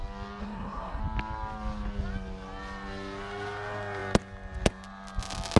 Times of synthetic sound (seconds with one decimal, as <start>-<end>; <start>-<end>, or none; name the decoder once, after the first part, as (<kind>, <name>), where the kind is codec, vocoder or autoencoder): 0.4-1.0 (codec, SNAC)